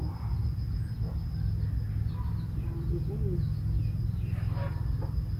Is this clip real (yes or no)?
yes